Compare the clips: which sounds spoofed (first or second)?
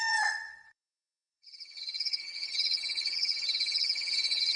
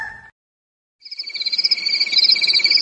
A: first